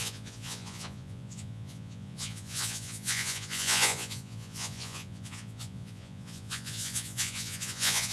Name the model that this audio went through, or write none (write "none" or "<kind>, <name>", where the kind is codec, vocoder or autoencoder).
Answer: vocoder, Vocos